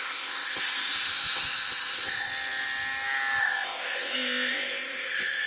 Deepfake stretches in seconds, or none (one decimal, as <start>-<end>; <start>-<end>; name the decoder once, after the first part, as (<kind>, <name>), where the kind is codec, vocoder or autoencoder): 0.0-2.3 (codec, ZipCodec); 3.4-5.5